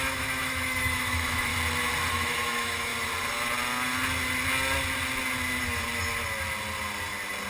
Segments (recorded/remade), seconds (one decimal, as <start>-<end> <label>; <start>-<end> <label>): 0.0-1.5 remade; 1.5-2.1 recorded; 2.1-2.9 remade; 2.9-7.5 recorded